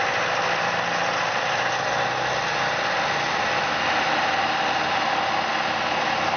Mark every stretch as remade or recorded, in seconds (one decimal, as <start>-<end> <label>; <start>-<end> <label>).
0.0-6.4 recorded